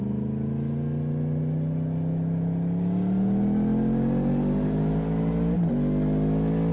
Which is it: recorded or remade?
recorded